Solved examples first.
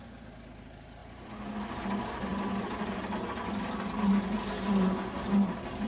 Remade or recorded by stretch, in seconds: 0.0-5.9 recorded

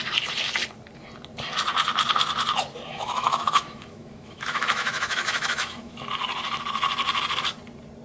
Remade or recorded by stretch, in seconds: 0.0-2.9 recorded; 2.9-6.1 remade; 6.1-8.0 recorded

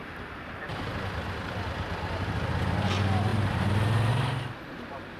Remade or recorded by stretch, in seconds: 0.0-5.2 recorded

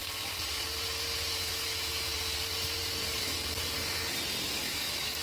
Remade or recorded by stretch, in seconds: 0.0-1.5 recorded; 1.5-2.1 remade; 2.1-4.5 recorded; 4.5-5.2 remade

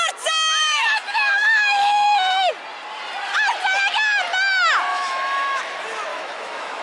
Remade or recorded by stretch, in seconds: 0.0-0.6 recorded; 0.6-2.5 remade; 2.5-4.9 recorded; 4.9-5.6 remade; 5.6-6.1 recorded; 6.1-6.8 remade